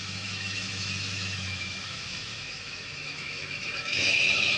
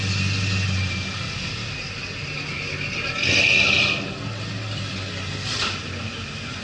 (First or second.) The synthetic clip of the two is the first